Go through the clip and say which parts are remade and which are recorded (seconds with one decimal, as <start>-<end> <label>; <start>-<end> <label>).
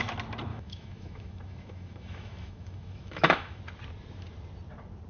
0.0-0.5 recorded; 0.5-3.6 remade; 3.6-5.1 recorded